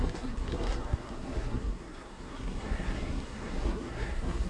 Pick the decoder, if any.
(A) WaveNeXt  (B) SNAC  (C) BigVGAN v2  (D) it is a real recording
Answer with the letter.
B